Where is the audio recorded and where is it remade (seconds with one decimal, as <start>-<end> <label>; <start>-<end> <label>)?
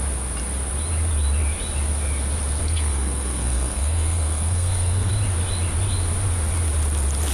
0.0-2.6 recorded; 2.6-5.1 remade; 5.1-7.3 recorded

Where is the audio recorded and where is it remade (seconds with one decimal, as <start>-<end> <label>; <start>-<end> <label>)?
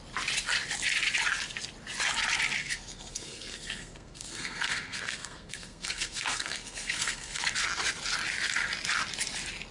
0.0-2.6 recorded; 2.6-7.4 remade; 7.4-9.7 recorded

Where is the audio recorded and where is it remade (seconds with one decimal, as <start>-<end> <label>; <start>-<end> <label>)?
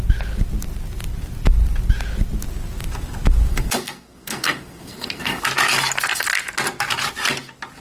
0.0-3.5 recorded; 3.5-5.4 remade; 5.4-7.8 recorded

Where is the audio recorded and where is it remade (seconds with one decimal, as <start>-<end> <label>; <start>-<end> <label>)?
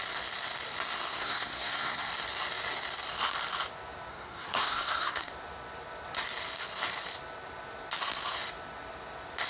0.0-1.1 recorded; 1.1-2.1 remade; 2.1-4.1 recorded; 4.1-5.3 remade; 5.3-9.5 recorded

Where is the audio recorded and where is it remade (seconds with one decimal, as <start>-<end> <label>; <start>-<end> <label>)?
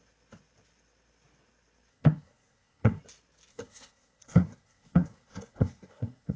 0.0-1.9 recorded; 1.9-3.0 remade; 3.0-3.5 recorded; 3.5-6.4 remade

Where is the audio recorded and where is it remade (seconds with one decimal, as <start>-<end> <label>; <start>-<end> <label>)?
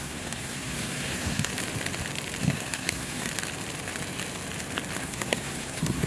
0.0-1.5 remade; 1.5-2.4 recorded; 2.4-3.3 remade; 3.3-5.0 recorded; 5.0-6.1 remade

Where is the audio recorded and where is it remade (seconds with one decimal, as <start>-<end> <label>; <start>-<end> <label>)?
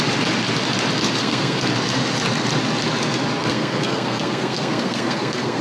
0.0-1.2 recorded; 1.2-1.7 remade; 1.7-3.4 recorded; 3.4-5.6 remade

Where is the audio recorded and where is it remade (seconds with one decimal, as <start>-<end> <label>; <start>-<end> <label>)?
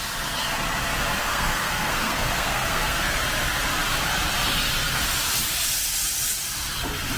0.0-1.2 recorded; 1.2-3.2 remade; 3.2-7.2 recorded